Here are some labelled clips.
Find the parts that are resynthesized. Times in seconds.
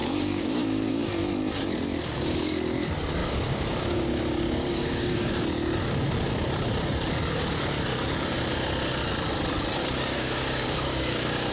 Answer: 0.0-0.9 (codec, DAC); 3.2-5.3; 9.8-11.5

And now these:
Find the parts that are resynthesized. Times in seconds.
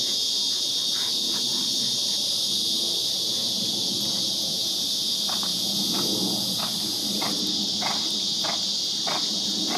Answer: none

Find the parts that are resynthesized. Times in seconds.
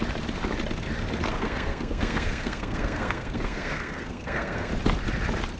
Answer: 1.3-4.7 (codec, SNAC)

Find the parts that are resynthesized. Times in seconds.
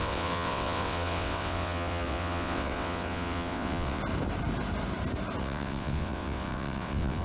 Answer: 0.0-4.0 (vocoder, WaveNeXt); 5.4-7.2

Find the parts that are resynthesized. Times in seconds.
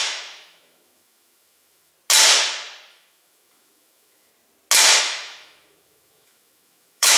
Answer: 0.0-1.9 (autoencoder, DAC-VAE); 2.9-4.3; 5.0-7.2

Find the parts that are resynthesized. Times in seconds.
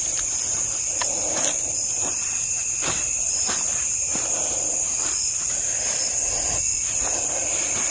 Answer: none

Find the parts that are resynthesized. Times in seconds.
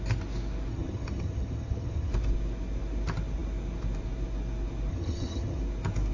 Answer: 0.7-2.1 (vocoder, HiFi-GAN); 4.9-5.6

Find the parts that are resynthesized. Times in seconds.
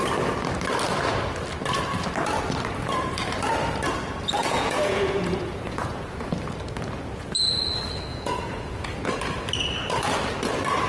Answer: 4.4-6.3 (vocoder, Vocos); 8.1-9.1